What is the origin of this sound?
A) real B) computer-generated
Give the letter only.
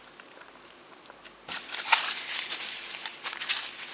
B